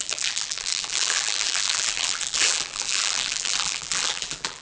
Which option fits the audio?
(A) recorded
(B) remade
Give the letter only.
B